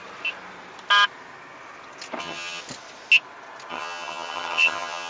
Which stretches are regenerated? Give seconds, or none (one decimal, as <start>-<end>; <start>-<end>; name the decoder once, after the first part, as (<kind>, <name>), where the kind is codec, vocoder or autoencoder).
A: 2.2-2.6 (vocoder, HiFi-GAN); 3.7-5.1